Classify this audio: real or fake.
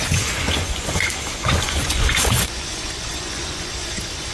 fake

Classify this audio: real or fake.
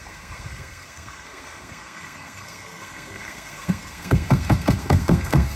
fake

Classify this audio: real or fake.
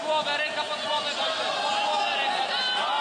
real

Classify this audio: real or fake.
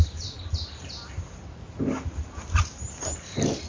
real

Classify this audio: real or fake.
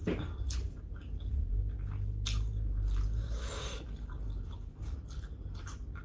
real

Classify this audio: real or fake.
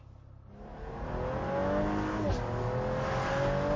real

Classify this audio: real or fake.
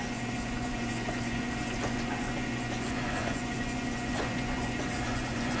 fake